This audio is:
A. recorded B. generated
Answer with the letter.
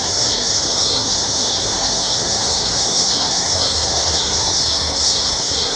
B